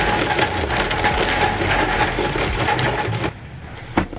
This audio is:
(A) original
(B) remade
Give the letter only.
A